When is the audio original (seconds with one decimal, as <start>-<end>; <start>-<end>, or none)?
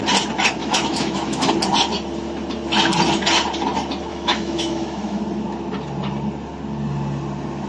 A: 0.0-0.6; 1.5-4.1; 5.2-7.7